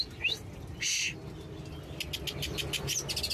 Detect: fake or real real